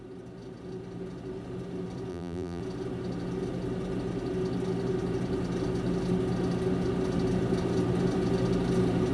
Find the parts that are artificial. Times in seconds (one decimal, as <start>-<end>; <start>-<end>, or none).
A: 2.1-2.6